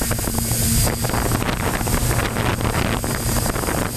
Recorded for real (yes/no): yes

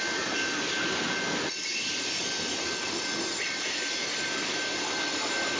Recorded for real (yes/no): yes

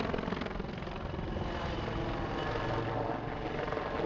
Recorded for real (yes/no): yes